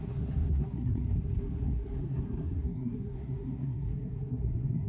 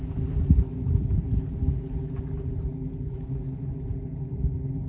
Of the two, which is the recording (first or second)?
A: second